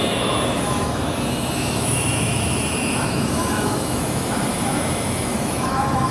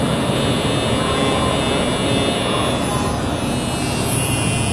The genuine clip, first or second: second